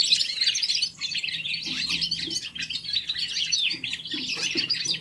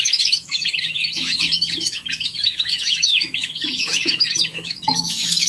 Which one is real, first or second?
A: first